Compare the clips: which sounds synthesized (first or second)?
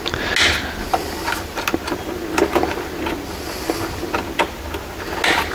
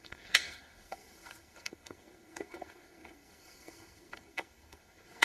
second